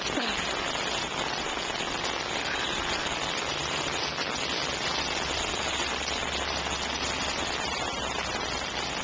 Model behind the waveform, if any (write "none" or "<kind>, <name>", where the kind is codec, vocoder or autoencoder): none